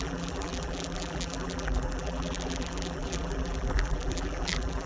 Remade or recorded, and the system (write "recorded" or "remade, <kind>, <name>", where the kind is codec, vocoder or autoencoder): remade, vocoder, BigVGAN v2